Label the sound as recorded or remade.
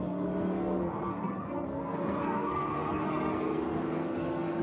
remade